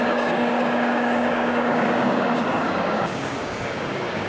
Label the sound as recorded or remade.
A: remade